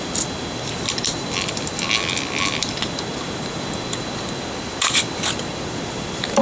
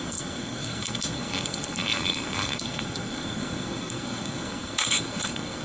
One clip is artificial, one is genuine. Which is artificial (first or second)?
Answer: second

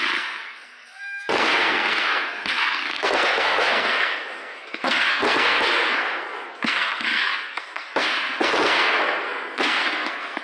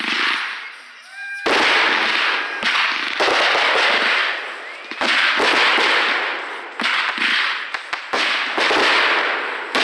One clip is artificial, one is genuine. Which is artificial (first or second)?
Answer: first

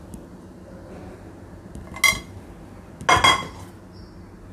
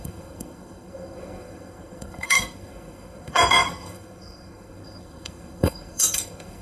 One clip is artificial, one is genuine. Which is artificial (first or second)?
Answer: second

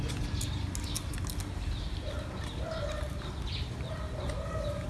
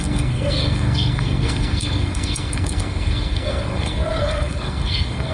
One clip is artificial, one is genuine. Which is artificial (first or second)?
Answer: second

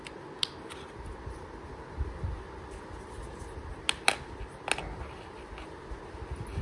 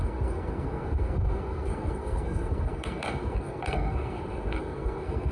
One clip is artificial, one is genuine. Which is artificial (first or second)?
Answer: second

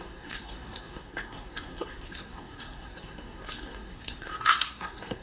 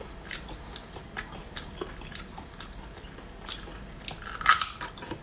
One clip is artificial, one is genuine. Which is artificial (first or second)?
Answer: first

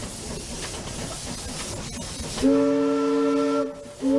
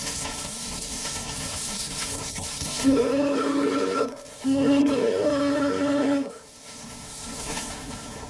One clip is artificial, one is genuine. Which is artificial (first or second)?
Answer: second